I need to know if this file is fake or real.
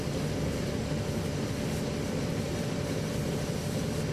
real